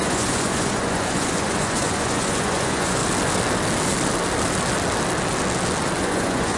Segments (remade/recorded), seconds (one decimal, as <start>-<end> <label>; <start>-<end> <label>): 0.0-3.0 remade; 3.0-6.0 recorded; 6.0-6.6 remade